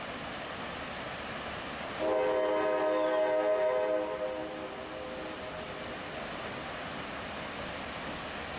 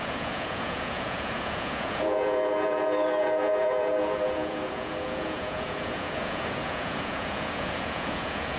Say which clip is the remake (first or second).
second